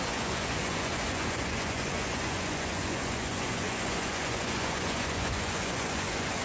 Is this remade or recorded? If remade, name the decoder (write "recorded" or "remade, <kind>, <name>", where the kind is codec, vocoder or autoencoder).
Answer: remade, vocoder, Vocos